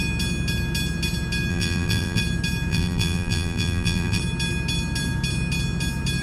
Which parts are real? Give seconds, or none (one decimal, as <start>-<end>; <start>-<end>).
0.0-1.5; 2.2-2.7; 4.2-6.2